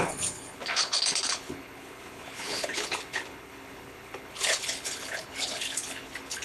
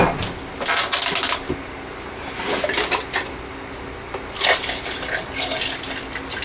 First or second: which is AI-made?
first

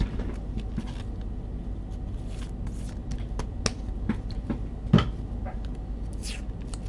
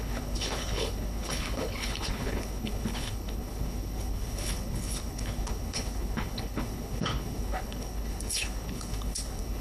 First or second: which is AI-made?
second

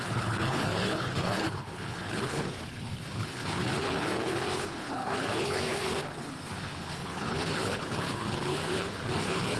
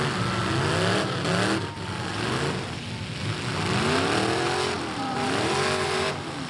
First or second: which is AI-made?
first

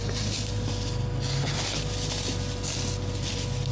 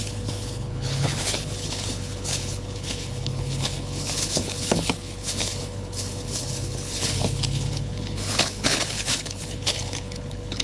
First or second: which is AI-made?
second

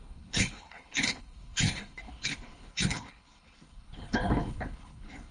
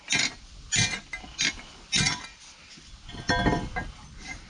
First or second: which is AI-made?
first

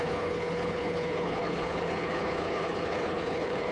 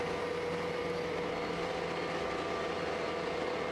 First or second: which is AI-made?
first